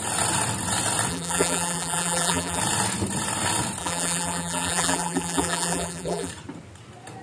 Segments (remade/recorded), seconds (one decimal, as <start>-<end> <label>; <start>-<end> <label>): 0.0-1.1 recorded; 1.1-2.6 remade; 2.6-3.8 recorded; 3.8-6.3 remade; 6.3-7.2 recorded